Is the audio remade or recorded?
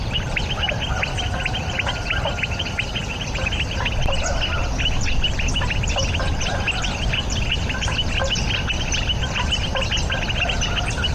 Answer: recorded